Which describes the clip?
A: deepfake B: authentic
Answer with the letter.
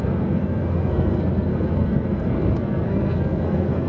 A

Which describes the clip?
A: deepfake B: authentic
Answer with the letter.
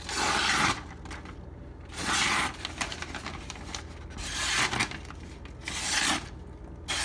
B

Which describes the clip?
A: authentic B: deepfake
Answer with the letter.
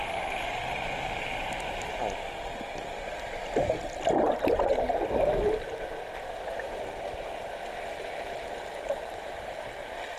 A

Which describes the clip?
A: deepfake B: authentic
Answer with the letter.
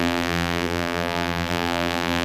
A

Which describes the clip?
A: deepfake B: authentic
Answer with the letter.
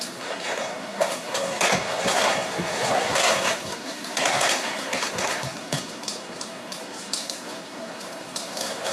A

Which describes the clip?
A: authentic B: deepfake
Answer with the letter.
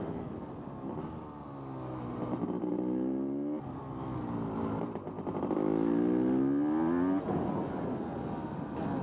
A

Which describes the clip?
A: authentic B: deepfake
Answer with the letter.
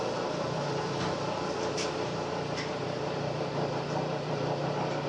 B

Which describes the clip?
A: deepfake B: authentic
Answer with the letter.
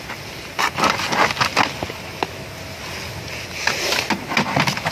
B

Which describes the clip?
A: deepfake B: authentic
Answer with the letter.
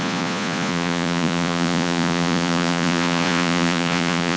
A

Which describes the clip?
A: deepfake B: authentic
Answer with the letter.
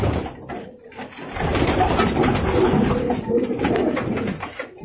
A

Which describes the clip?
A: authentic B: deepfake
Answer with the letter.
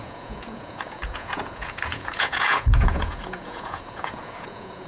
B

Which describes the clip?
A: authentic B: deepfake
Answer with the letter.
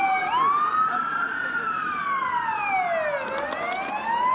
A